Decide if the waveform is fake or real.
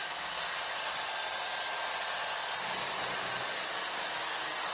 real